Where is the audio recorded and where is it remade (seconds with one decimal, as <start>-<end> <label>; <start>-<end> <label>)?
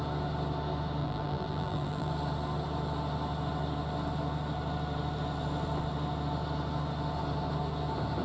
0.0-1.0 recorded; 1.0-2.1 remade; 2.1-8.2 recorded